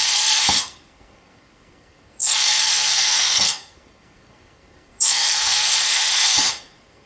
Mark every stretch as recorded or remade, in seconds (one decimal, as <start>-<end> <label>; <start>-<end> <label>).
0.0-7.1 remade